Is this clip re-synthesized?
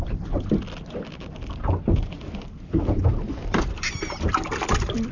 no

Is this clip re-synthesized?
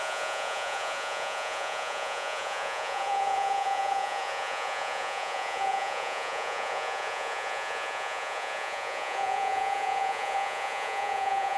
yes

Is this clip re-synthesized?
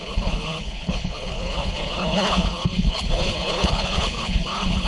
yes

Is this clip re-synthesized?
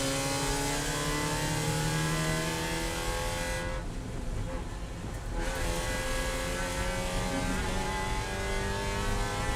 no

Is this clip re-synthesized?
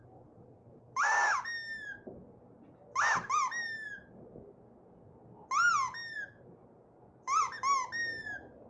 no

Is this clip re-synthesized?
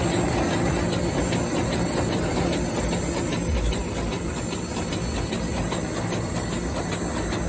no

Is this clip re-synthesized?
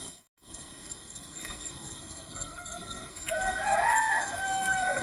yes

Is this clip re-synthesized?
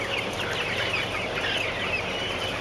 no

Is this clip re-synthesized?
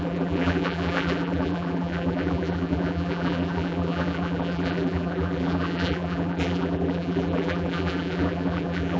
yes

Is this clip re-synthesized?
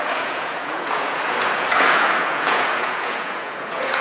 yes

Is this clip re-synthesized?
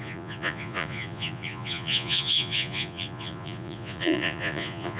yes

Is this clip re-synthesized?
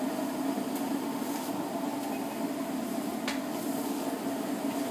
no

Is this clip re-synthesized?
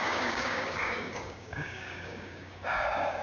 yes